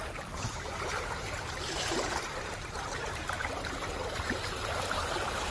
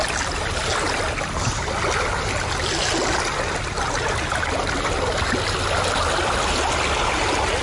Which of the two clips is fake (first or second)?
first